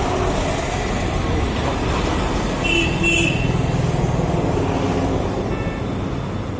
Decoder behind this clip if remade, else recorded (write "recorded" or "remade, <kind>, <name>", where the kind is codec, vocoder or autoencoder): recorded